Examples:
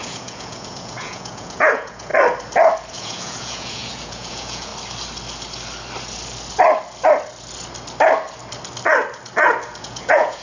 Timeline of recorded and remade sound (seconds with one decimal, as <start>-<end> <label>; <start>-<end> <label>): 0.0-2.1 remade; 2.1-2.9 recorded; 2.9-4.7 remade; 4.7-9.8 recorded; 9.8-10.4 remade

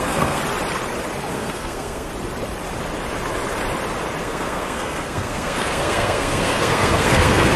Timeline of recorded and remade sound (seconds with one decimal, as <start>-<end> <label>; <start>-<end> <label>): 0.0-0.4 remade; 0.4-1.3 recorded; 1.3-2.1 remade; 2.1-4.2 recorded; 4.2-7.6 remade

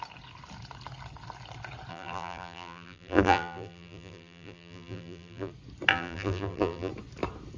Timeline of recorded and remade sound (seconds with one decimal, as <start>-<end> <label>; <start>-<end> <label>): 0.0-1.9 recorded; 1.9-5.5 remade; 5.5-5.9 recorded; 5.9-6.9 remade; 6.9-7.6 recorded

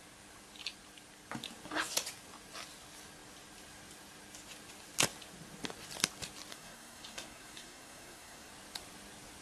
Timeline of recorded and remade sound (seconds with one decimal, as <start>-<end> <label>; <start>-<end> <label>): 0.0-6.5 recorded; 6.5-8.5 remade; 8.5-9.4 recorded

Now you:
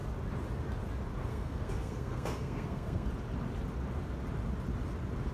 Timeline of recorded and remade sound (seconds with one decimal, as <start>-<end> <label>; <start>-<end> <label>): 0.0-1.3 recorded; 1.3-3.1 remade; 3.1-5.3 recorded

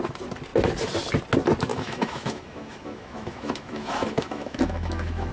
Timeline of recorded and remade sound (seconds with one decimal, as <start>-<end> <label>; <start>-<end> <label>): 0.0-1.7 recorded; 1.7-5.3 remade

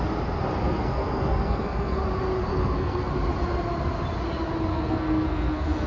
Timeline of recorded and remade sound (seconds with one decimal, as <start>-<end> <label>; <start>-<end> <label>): 0.0-0.6 recorded; 0.6-2.0 remade; 2.0-2.5 recorded; 2.5-3.1 remade; 3.1-4.7 recorded; 4.7-5.9 remade

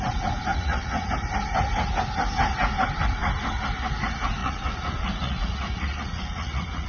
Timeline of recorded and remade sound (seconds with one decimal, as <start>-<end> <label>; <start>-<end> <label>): 0.0-0.5 recorded; 0.5-1.1 remade; 1.1-4.4 recorded; 4.4-6.9 remade